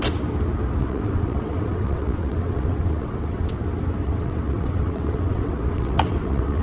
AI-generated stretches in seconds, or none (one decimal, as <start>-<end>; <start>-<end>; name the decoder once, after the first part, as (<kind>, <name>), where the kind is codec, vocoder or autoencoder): 0.8-3.6 (vocoder, WaveNeXt); 4.0-6.6